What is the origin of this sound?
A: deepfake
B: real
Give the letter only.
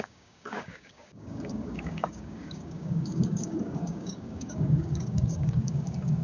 A